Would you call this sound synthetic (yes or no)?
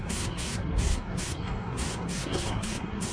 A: yes